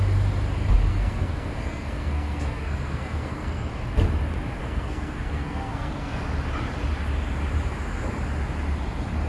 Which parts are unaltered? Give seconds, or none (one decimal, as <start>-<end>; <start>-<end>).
0.0-0.9; 3.7-4.6; 6.2-9.3